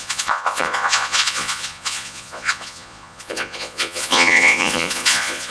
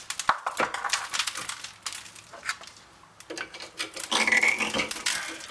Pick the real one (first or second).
second